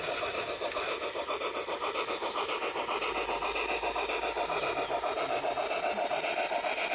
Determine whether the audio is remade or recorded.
recorded